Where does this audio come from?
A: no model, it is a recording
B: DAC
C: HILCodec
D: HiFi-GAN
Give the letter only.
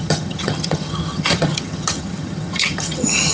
D